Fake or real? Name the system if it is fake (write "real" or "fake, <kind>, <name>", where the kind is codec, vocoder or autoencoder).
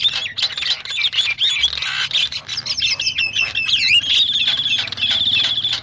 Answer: real